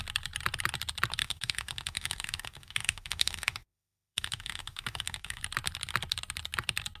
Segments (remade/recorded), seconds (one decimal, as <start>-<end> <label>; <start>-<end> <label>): 0.0-1.2 recorded; 1.2-5.4 remade; 5.4-7.0 recorded